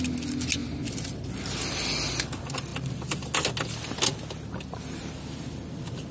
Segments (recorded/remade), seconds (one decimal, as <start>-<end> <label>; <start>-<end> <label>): 0.0-6.1 recorded

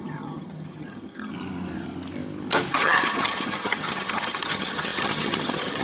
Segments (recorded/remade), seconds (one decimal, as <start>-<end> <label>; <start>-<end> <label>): 0.0-1.3 remade; 1.3-2.7 recorded; 2.7-5.8 remade